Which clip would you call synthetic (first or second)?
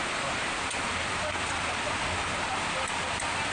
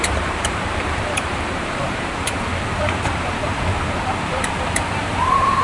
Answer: second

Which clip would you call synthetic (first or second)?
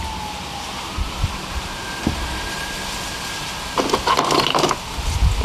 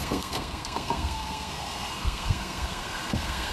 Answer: second